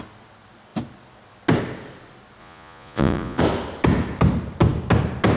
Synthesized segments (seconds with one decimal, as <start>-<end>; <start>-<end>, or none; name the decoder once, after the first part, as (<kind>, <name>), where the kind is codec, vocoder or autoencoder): 2.4-3.4 (vocoder, Vocos)